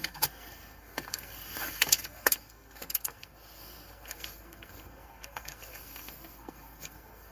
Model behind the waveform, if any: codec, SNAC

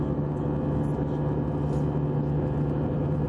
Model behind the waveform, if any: none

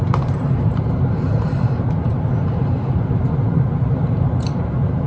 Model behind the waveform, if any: vocoder, BigVGAN v2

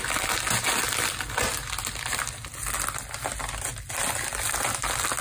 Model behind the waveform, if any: none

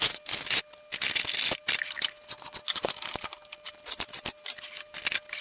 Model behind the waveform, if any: none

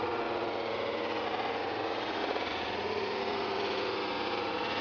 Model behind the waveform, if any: vocoder, Vocos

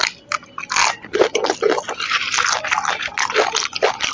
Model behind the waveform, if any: none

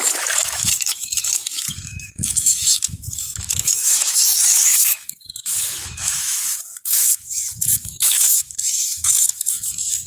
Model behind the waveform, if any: autoencoder, DAC-VAE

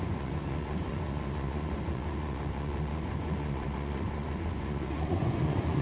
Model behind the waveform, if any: vocoder, Vocos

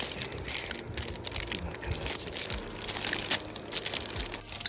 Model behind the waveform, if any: none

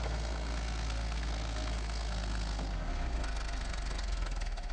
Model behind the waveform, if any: codec, SNAC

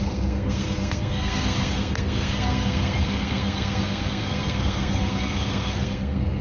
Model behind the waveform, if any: codec, SNAC